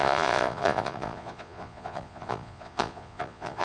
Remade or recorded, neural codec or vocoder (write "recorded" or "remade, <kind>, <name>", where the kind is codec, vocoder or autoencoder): remade, vocoder, Vocos